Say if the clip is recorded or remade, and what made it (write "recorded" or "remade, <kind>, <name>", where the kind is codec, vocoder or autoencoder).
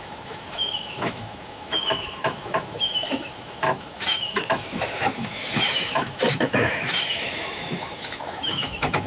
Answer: remade, autoencoder, DAC-VAE